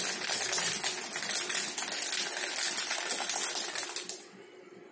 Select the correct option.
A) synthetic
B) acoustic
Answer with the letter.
B